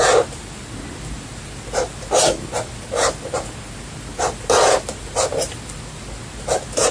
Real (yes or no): yes